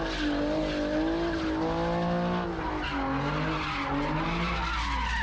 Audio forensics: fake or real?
real